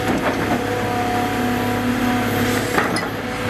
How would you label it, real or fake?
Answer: real